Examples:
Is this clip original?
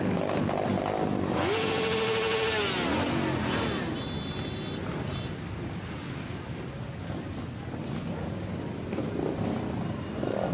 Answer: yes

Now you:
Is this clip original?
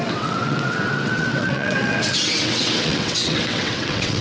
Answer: no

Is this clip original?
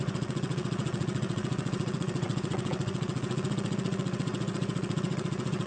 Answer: no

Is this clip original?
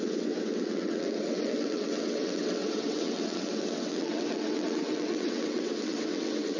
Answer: no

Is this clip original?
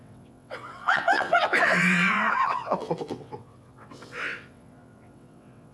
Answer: no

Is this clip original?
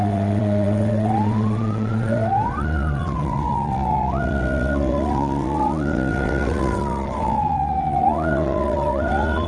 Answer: no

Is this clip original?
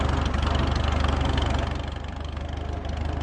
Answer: yes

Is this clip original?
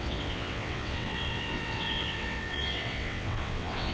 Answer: no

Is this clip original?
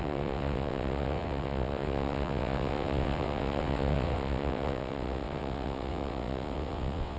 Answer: no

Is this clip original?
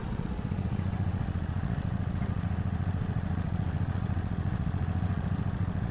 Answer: no